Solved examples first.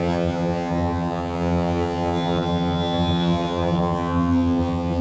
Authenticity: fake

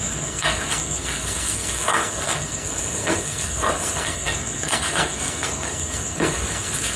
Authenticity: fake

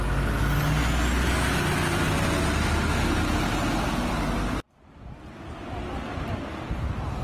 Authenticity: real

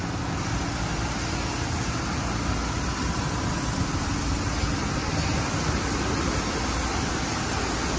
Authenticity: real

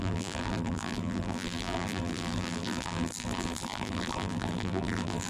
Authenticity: fake